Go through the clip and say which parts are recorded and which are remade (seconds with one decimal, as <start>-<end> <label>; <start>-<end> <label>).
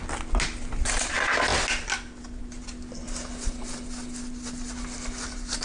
0.0-5.6 recorded